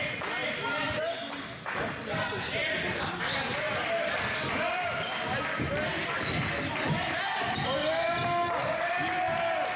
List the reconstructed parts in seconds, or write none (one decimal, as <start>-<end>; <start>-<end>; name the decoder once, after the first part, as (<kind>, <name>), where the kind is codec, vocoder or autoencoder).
0.4-1.0 (vocoder, BigVGAN v2)